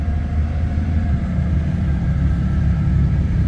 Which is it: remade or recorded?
remade